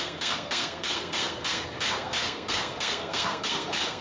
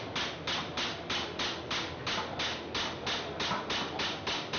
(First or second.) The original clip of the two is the second